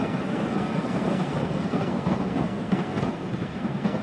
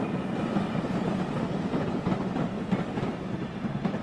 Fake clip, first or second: first